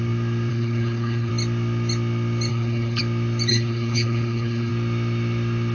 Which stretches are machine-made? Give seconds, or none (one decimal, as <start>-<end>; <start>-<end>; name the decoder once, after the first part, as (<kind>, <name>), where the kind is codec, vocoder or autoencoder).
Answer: 0.5-1.3 (codec, HILCodec); 2.5-3.0; 3.5-4.7